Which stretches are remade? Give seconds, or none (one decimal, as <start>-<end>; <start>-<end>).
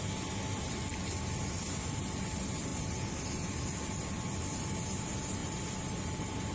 none